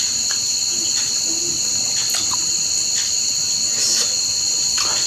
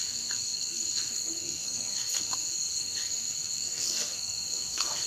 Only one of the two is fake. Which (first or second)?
second